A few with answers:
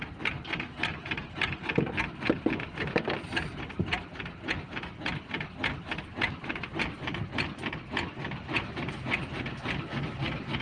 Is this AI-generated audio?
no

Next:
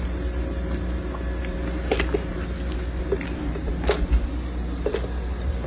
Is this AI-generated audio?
no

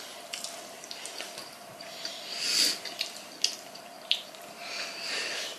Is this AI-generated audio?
no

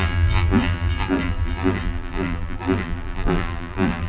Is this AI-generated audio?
yes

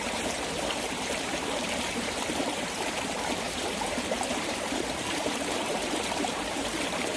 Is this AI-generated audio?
yes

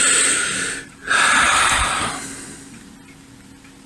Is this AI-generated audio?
no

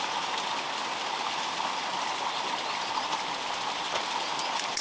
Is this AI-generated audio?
no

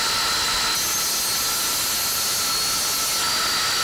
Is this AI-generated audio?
no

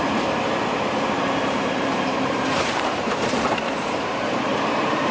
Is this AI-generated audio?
yes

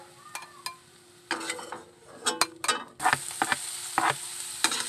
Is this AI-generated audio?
no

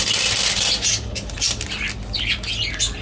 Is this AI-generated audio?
no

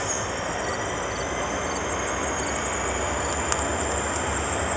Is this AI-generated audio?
no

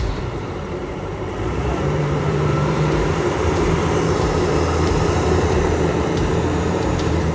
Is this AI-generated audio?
yes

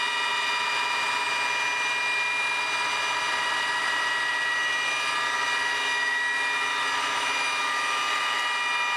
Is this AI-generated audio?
no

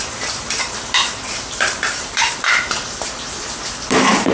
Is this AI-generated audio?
yes